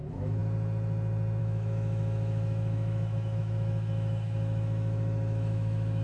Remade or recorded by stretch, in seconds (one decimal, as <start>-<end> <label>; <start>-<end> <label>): 0.0-0.4 remade; 0.4-1.4 recorded; 1.4-6.0 remade